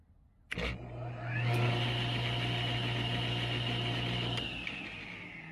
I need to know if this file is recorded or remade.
recorded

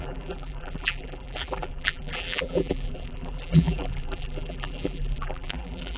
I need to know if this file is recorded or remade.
remade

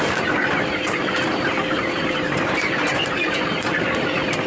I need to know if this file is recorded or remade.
remade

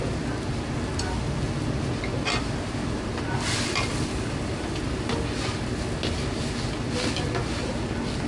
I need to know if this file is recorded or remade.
recorded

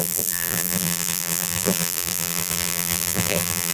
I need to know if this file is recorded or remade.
remade